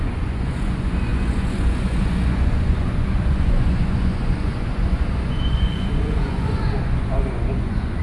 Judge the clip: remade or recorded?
remade